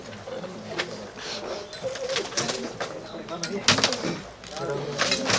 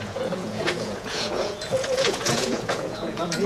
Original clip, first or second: first